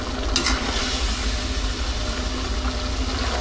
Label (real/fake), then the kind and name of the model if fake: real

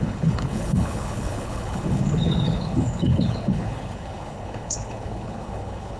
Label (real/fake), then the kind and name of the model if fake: fake, codec, HILCodec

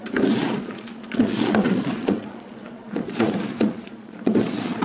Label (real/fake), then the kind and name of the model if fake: fake, vocoder, Vocos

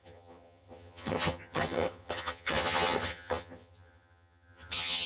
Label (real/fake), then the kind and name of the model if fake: fake, vocoder, HiFi-GAN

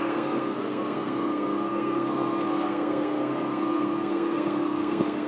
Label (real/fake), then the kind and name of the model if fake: fake, codec, SNAC